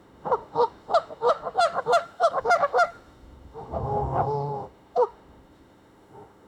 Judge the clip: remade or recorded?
remade